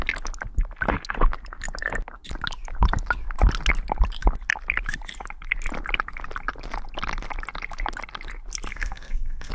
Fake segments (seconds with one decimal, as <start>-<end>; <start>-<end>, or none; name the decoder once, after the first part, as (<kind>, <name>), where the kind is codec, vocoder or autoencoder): 8.7-9.5 (codec, SNAC)

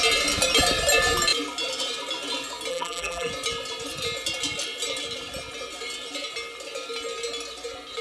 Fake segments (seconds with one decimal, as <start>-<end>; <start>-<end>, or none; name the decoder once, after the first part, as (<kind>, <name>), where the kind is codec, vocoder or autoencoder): 2.7-3.3 (vocoder, BigVGAN v2)

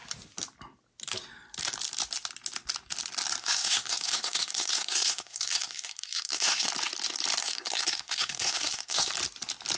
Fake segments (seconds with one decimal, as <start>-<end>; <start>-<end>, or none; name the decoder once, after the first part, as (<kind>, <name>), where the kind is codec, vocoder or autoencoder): 3.4-6.7 (codec, SNAC); 7.4-9.1